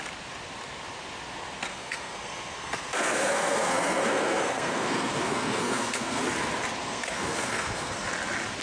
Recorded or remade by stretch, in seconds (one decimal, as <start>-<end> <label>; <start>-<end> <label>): 0.0-1.7 recorded; 1.7-6.2 remade; 6.2-6.8 recorded; 6.8-8.1 remade; 8.1-8.6 recorded